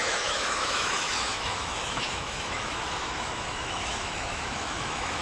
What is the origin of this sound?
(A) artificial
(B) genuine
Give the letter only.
A